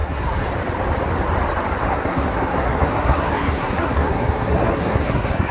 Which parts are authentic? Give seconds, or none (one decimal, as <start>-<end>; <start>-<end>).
0.5-1.9